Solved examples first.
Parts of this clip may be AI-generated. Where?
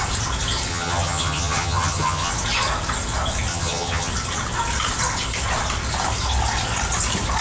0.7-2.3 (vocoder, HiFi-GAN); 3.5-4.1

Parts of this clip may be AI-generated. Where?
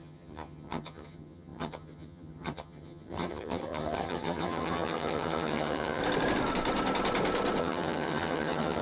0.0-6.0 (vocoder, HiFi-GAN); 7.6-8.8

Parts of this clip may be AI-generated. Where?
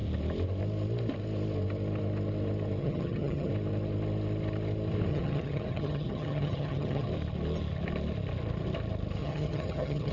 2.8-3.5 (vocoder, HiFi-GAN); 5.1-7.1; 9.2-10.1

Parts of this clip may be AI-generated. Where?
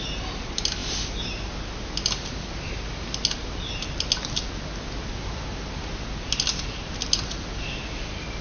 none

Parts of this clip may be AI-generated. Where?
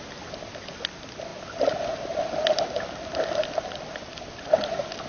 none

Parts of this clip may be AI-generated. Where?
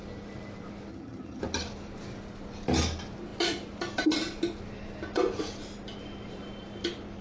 0.9-1.4 (vocoder, HiFi-GAN)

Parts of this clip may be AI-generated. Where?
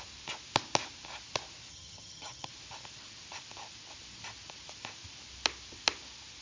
1.7-2.5 (vocoder, HiFi-GAN)